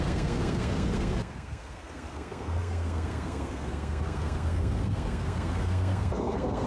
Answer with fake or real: fake